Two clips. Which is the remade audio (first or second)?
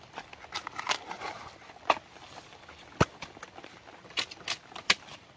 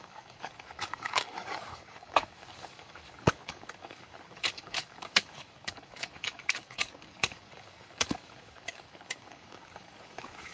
second